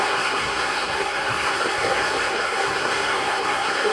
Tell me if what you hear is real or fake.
fake